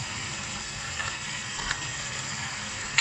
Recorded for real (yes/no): no